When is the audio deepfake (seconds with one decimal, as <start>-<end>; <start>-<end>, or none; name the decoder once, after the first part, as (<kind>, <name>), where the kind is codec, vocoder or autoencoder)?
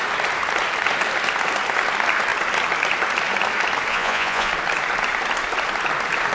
3.9-4.5 (vocoder, Vocos)